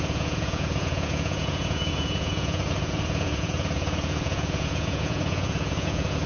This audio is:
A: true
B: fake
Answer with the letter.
B